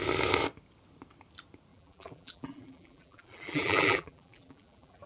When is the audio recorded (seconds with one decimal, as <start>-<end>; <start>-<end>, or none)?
0.0-1.7